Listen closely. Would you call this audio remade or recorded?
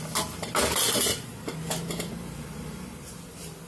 recorded